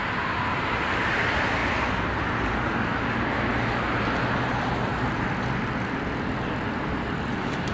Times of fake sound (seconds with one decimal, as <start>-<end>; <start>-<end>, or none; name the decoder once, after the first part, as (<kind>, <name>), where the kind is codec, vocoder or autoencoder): none